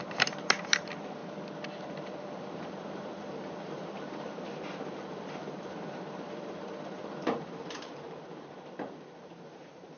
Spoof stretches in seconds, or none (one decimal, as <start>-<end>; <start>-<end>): 0.0-1.2; 1.8-10.0